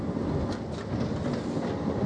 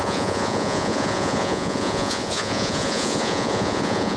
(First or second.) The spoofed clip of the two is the second